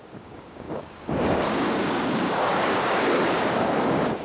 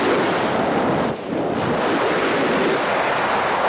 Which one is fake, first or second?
first